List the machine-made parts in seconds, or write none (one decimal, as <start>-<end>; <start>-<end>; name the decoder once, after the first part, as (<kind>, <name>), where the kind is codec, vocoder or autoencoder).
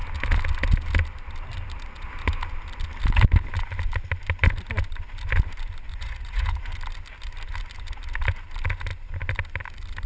5.9-6.6 (vocoder, Vocos)